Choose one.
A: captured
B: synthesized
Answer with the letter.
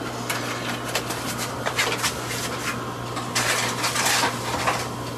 A